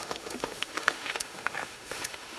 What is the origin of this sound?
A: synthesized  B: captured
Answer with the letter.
A